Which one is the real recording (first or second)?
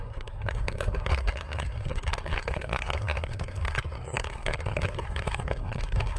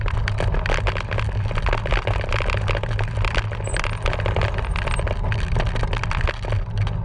second